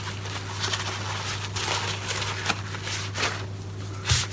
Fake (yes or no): no